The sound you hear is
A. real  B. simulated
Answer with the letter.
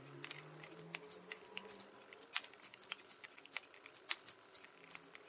B